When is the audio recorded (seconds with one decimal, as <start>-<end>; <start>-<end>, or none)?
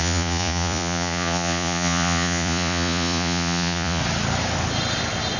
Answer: 4.0-5.4